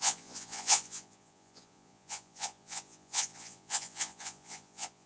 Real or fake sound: fake